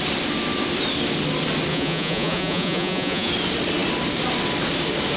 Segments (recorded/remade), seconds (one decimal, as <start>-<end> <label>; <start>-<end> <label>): 0.0-1.7 recorded; 1.7-3.3 remade; 3.3-5.2 recorded